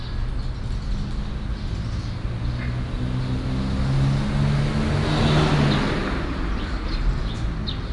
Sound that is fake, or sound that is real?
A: real